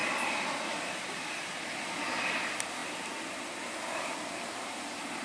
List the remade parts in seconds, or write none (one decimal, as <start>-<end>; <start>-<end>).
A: none